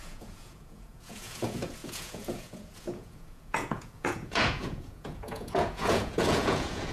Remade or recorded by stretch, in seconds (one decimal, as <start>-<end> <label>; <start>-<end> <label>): 0.0-6.9 remade